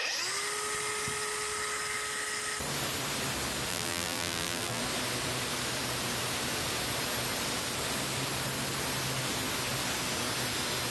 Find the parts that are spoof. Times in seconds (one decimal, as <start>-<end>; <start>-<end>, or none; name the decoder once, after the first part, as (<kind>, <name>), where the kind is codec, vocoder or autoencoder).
3.7-4.8 (vocoder, BigVGAN v2)